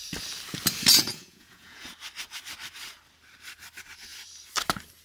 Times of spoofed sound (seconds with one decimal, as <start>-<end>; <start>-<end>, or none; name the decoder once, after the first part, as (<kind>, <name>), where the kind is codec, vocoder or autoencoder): 0.9-1.9 (vocoder, Vocos)